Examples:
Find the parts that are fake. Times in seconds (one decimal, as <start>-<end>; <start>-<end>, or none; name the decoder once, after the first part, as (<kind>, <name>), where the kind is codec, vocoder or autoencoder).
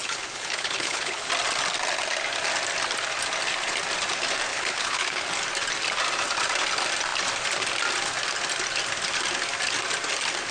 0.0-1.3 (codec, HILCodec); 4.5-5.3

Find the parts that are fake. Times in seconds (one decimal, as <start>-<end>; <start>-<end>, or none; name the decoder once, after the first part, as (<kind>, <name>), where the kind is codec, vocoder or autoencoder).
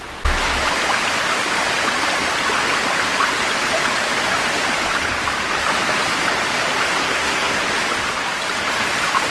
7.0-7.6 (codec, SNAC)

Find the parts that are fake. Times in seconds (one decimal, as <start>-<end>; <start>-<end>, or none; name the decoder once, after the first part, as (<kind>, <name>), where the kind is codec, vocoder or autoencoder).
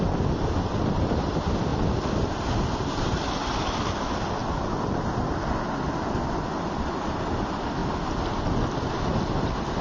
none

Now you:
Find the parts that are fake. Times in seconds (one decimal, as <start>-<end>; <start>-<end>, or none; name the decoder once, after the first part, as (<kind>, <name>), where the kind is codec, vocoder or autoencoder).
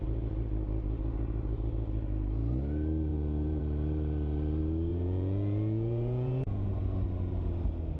3.1-3.6 (vocoder, Vocos); 4.9-6.7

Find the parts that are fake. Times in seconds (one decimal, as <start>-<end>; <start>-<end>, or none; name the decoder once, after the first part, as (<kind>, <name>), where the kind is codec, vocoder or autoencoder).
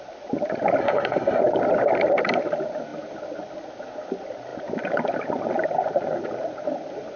0.8-1.4 (codec, SNAC)